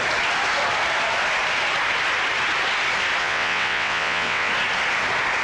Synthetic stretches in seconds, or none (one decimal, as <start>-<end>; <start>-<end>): 3.2-4.5